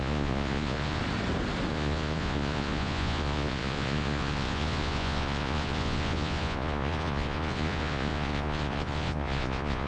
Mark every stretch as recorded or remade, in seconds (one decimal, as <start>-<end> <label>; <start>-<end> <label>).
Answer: 0.0-1.0 remade; 1.0-1.7 recorded; 1.7-9.9 remade